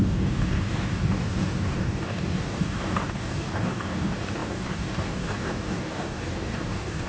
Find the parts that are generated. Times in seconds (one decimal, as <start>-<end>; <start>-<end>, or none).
0.0-7.1